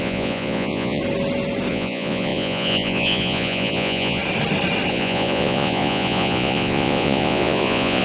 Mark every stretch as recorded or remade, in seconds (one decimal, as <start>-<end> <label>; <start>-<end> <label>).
0.0-1.0 remade; 1.0-1.7 recorded; 1.7-4.2 remade; 4.2-4.9 recorded; 4.9-8.0 remade